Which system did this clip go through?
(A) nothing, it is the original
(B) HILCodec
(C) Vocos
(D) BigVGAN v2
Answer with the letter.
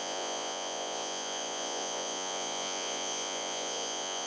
C